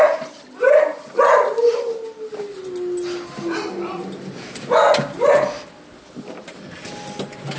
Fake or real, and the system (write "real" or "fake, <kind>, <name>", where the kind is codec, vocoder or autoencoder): real